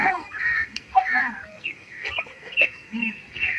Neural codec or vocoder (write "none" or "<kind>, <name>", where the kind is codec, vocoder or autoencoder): codec, SNAC